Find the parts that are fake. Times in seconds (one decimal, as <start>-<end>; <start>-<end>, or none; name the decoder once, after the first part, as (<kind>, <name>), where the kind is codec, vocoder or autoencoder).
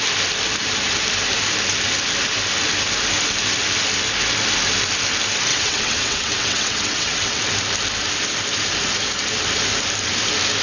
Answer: 5.5-7.4 (vocoder, WaveNeXt)